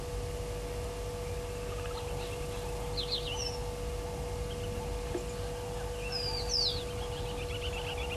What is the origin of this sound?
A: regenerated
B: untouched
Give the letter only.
B